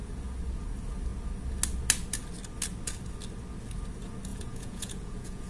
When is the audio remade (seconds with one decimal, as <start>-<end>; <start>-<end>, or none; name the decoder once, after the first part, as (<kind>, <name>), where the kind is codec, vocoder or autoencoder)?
4.3-5.5 (vocoder, Vocos)